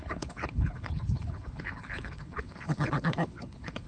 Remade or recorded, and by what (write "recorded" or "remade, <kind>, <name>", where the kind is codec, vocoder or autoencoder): remade, codec, HILCodec